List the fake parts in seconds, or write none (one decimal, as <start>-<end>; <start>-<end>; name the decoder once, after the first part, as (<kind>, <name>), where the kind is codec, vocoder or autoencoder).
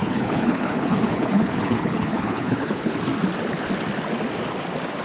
0.0-3.0 (codec, HILCodec)